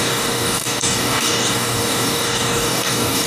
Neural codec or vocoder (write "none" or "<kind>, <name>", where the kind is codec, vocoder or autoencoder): codec, DAC